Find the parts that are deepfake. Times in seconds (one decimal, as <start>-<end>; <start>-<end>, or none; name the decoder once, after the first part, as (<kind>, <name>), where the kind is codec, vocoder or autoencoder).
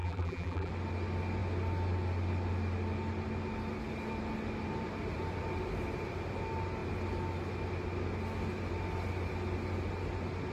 0.0-0.7 (vocoder, BigVGAN v2)